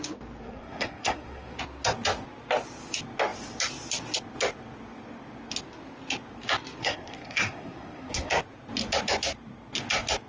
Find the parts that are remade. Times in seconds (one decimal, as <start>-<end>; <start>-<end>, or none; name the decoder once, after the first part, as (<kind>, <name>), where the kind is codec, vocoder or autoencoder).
0.4-1.6 (codec, SNAC); 6.8-8.3

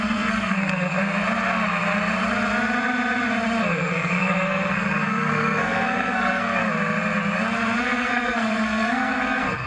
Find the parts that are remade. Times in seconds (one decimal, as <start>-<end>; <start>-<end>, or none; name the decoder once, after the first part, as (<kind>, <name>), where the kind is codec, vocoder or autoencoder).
0.0-1.0 (codec, SNAC); 3.6-6.6; 7.8-9.7

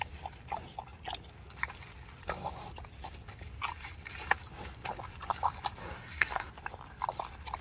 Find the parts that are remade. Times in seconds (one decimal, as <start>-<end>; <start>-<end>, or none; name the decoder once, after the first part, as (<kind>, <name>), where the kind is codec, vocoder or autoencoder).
5.8-6.5 (codec, SNAC)

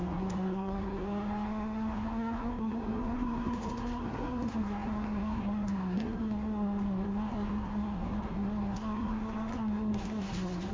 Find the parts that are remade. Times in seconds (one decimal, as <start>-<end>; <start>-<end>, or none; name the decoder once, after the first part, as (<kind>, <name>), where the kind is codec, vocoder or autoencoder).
0.0-10.7 (codec, SNAC)

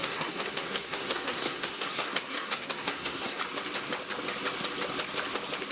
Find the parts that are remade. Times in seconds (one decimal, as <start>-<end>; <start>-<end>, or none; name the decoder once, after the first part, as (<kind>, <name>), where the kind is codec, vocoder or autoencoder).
0.0-3.4 (codec, SNAC)